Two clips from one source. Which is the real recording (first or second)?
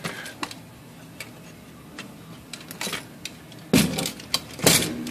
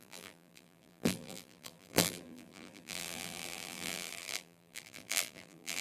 first